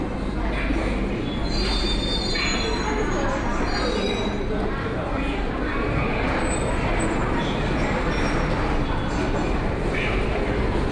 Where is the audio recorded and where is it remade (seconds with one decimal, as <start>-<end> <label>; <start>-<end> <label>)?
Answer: 0.0-10.9 recorded